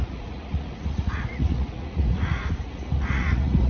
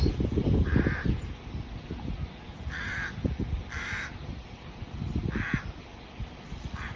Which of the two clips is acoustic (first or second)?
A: second